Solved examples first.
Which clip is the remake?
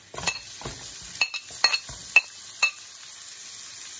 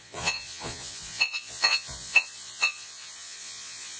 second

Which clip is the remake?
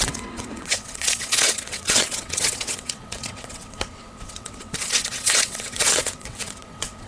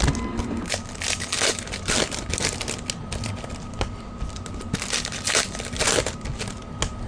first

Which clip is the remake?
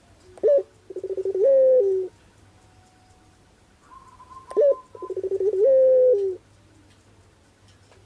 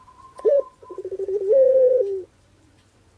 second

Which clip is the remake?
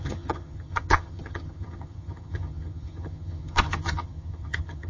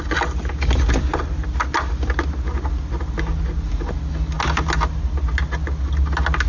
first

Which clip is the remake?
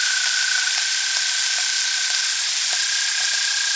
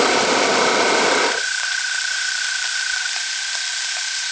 second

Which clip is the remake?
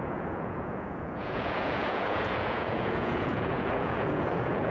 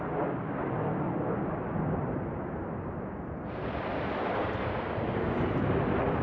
first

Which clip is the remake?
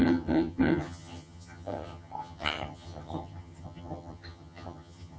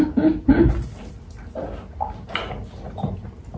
first